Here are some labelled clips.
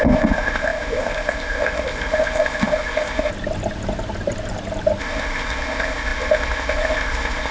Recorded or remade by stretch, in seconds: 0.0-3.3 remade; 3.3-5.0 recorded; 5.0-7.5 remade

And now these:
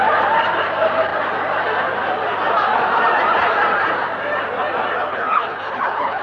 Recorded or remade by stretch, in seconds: 0.0-5.1 recorded; 5.1-6.2 remade

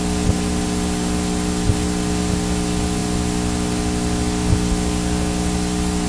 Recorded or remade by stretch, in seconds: 0.0-6.1 recorded

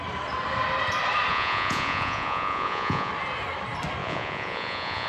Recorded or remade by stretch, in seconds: 0.0-1.3 recorded; 1.3-3.1 remade; 3.1-4.0 recorded; 4.0-5.1 remade

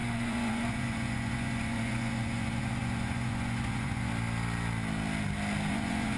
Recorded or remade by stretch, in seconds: 0.0-4.1 remade; 4.1-5.7 recorded; 5.7-6.2 remade